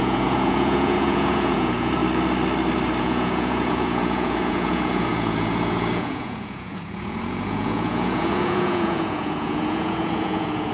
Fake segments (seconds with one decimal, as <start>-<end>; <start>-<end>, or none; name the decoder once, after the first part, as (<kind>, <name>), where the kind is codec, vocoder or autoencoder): 0.0-2.0 (vocoder, Vocos); 3.0-10.7

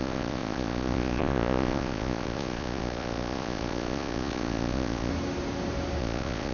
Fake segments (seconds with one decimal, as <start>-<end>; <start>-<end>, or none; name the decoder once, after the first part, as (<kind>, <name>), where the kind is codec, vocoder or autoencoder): 0.0-5.1 (vocoder, Vocos); 6.0-6.5